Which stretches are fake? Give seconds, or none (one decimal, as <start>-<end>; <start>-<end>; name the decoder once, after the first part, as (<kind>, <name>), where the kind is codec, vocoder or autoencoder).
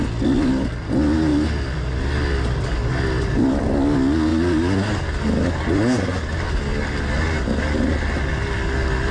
none